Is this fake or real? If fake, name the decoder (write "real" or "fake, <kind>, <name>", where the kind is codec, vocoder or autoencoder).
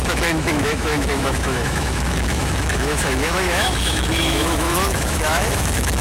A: fake, autoencoder, DAC-VAE